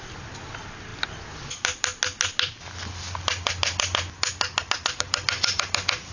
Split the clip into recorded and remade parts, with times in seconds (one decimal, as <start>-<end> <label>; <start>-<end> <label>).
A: 0.0-6.1 recorded